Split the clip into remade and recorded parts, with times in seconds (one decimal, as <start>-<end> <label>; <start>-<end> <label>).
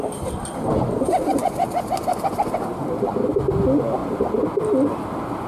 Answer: 0.0-5.5 recorded